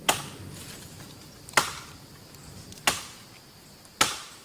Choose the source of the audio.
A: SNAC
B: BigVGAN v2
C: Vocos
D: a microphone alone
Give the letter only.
D